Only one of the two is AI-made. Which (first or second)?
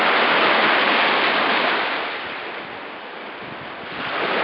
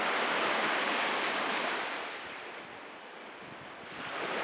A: second